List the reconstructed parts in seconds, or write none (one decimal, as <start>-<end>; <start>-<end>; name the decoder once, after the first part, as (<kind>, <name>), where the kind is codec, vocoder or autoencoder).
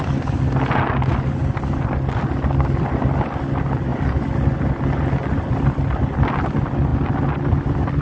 none